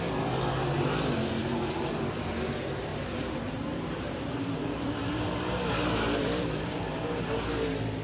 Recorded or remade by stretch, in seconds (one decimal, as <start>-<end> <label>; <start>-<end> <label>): 0.0-1.4 recorded; 1.4-2.0 remade; 2.0-2.9 recorded; 2.9-7.4 remade; 7.4-8.0 recorded